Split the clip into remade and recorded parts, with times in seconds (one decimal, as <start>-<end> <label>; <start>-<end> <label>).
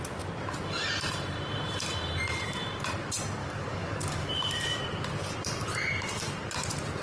0.0-3.4 recorded; 3.4-4.3 remade; 4.3-7.0 recorded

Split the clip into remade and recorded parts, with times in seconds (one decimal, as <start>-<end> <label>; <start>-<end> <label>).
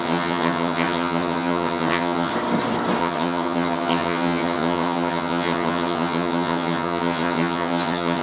0.0-2.3 remade; 2.3-3.0 recorded; 3.0-8.2 remade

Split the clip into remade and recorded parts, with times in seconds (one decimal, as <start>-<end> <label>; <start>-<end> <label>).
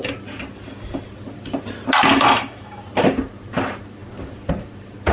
0.0-2.1 recorded; 2.1-2.8 remade; 2.8-5.1 recorded